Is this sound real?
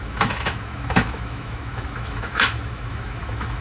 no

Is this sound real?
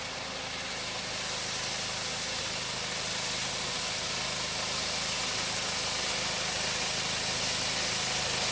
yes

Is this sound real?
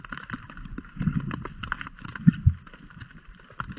yes